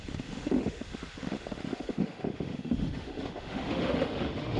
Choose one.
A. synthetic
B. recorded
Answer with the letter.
A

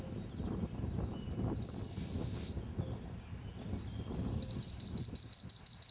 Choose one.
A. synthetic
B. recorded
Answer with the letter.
B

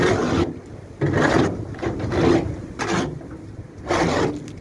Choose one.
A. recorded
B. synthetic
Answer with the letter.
A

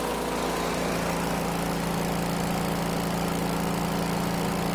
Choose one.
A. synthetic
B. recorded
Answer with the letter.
B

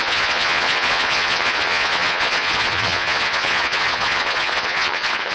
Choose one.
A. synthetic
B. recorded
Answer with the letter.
A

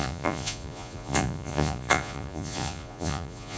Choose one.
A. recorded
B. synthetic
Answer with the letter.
B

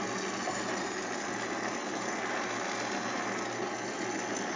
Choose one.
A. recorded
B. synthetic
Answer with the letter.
A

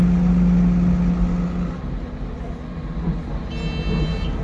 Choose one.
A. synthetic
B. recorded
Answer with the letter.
B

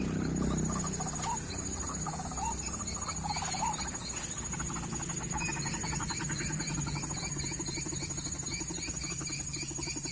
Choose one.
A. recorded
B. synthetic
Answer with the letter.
A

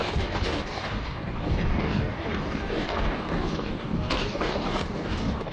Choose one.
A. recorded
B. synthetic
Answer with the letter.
B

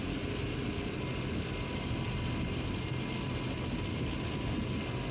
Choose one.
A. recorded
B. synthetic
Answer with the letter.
A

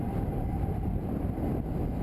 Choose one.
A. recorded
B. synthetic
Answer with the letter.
A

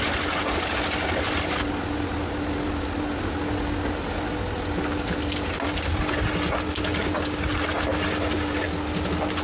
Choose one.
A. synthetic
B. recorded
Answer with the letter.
B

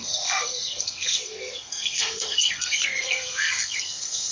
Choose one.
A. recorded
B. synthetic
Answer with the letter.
B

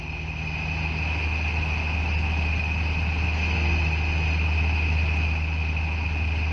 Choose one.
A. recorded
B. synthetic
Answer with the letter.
A